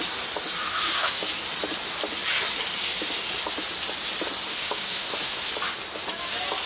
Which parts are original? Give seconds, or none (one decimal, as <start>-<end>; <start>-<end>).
0.0-0.6; 1.2-4.5; 5.5-6.7